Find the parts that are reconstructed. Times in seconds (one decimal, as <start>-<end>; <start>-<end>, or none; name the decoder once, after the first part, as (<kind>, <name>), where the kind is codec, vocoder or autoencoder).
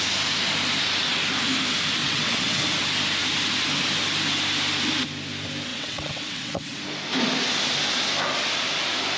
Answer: 2.0-2.6 (vocoder, WaveNeXt); 5.7-6.8